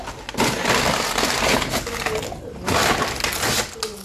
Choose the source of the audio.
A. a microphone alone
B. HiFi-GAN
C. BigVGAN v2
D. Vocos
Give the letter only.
A